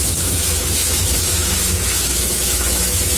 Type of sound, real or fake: fake